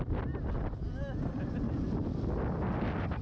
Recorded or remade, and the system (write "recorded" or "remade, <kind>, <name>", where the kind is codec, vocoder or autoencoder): recorded